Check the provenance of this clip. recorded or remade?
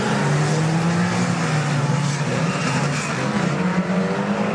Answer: recorded